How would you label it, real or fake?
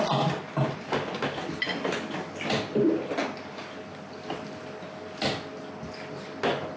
real